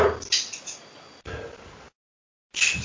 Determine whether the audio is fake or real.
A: real